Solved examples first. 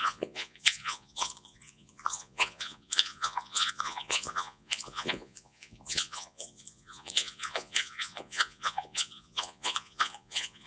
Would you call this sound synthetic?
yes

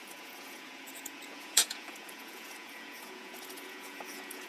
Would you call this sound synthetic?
yes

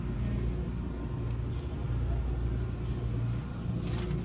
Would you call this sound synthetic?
no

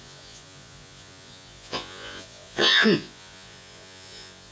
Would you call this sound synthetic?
yes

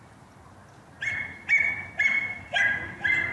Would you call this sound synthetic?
no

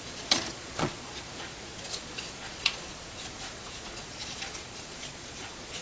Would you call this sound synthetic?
yes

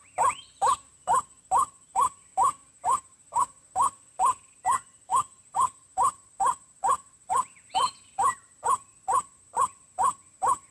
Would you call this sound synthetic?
no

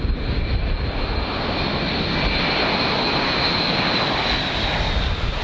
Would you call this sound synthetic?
no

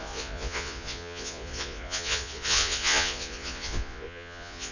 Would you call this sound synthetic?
yes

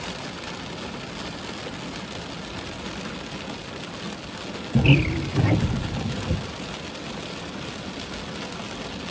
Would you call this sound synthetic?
no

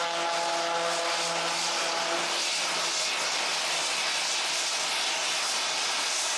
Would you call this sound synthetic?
no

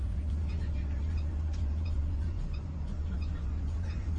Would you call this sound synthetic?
yes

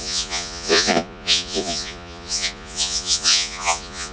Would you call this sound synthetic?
yes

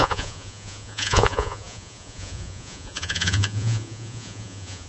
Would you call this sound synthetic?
yes